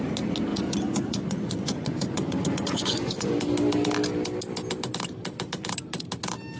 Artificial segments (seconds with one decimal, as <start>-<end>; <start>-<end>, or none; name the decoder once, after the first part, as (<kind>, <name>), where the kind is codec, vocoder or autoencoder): 0.5-3.3 (vocoder, Vocos)